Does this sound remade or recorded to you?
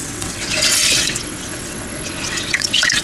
remade